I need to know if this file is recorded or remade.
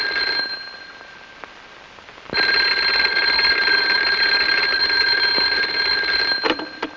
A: recorded